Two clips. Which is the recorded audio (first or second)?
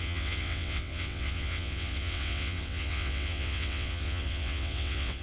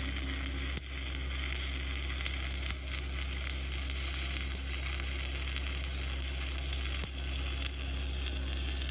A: second